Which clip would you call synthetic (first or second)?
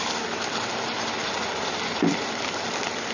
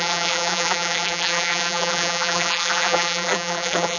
second